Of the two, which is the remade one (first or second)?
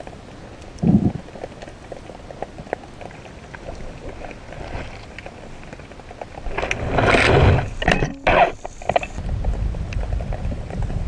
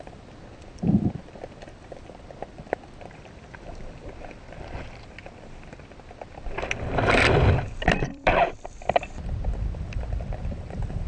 second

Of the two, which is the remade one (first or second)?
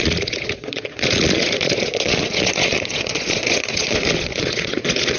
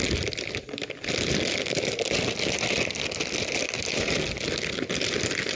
first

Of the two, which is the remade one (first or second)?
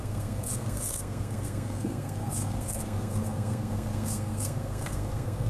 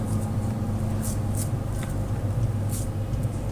first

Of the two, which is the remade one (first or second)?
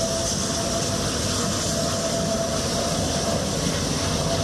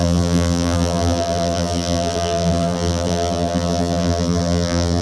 second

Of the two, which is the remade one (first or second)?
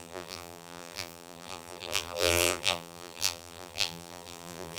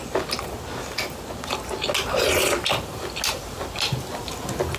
first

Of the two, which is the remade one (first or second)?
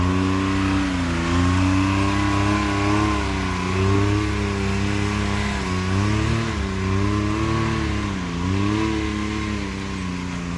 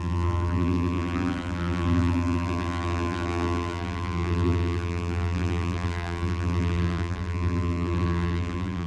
second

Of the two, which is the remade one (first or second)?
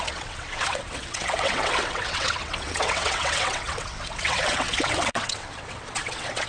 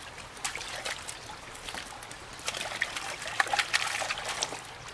first